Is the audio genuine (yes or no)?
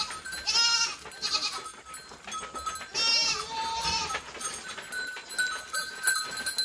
yes